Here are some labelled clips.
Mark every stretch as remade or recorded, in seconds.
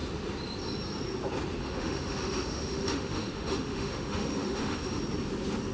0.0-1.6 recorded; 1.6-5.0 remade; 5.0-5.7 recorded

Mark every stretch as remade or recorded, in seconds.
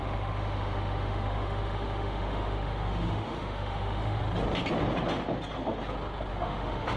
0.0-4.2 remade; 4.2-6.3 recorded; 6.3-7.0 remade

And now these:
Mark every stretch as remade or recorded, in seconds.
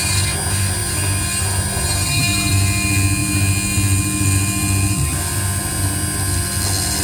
0.0-7.0 recorded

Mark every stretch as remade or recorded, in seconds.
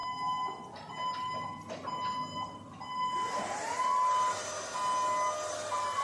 0.0-6.0 recorded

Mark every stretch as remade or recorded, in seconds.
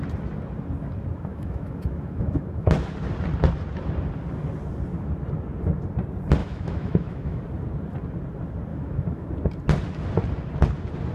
0.0-1.3 recorded; 1.3-2.7 remade; 2.7-6.4 recorded; 6.4-7.4 remade; 7.4-8.7 recorded; 8.7-9.3 remade; 9.3-11.1 recorded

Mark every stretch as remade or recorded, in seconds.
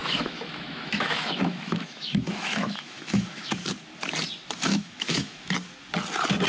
0.0-3.6 remade; 3.6-4.7 recorded; 4.7-5.5 remade; 5.5-6.5 recorded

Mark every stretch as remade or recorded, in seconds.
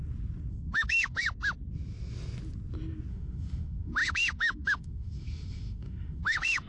0.0-0.5 recorded; 0.5-1.2 remade; 1.2-3.1 recorded; 3.1-6.7 remade